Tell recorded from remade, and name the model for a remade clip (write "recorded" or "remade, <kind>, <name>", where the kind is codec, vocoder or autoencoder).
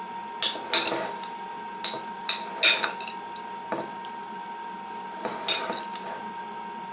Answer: recorded